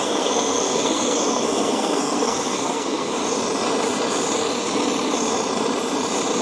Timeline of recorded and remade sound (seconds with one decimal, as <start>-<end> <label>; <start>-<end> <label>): 0.0-3.2 remade; 3.2-6.4 recorded